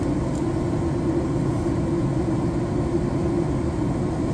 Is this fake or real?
real